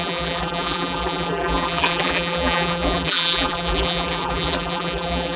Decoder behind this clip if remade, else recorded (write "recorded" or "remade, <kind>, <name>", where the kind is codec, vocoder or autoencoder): remade, vocoder, BigVGAN v2